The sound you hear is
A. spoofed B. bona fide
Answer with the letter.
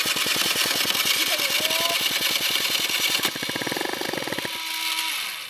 B